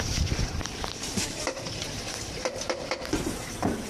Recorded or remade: remade